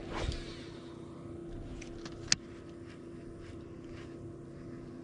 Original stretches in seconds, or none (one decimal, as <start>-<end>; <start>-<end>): 0.0-5.0